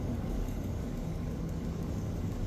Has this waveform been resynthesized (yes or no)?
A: yes